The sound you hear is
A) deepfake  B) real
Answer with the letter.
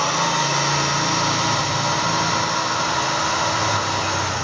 B